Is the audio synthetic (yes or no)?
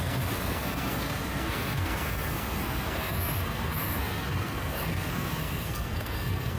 yes